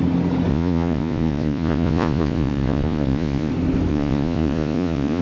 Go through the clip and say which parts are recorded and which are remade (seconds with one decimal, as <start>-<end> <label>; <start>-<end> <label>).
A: 0.0-0.5 recorded; 0.5-3.5 remade; 3.5-3.9 recorded; 3.9-5.2 remade